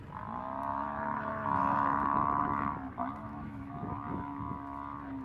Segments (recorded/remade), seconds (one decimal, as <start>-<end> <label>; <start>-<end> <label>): 0.0-0.7 recorded; 0.7-2.7 remade; 2.7-3.2 recorded; 3.2-4.5 remade; 4.5-5.2 recorded